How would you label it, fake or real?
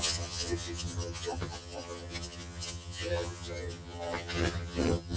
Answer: fake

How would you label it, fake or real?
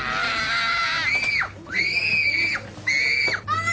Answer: real